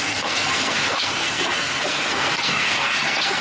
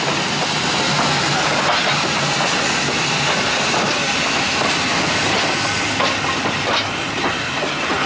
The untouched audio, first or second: second